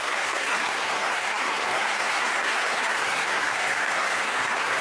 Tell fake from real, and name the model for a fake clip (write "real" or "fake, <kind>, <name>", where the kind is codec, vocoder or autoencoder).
fake, codec, SNAC